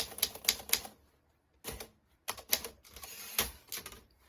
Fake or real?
fake